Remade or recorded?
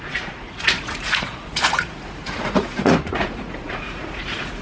remade